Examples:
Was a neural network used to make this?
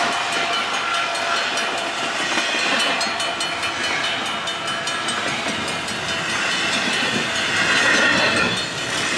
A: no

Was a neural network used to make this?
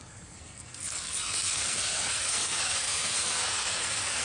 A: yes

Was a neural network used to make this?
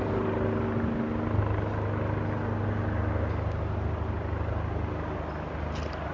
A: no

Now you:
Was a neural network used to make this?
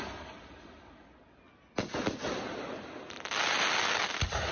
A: no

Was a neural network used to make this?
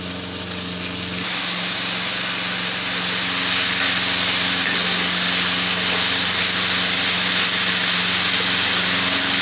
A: no